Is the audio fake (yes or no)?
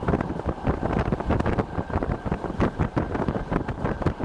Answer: no